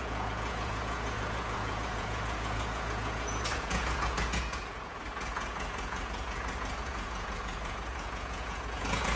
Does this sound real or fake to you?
fake